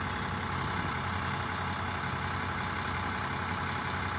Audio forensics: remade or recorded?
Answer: recorded